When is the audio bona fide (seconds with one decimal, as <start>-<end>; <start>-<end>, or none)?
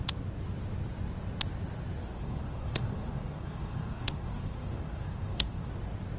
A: 0.0-2.0; 5.7-6.2